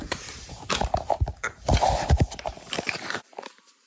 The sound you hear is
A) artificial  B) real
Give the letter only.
A